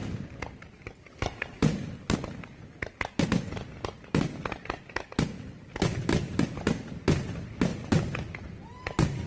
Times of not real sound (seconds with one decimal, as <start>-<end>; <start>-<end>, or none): none